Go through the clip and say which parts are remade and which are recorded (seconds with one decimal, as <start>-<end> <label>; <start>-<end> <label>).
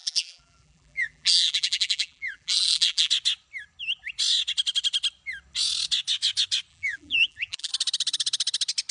0.0-3.1 remade; 3.1-6.7 recorded; 6.7-7.7 remade; 7.7-8.9 recorded